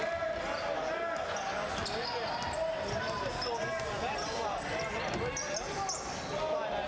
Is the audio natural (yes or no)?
yes